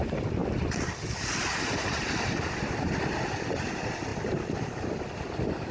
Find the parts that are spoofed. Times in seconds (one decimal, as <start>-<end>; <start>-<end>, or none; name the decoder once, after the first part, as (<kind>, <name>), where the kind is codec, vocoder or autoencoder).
none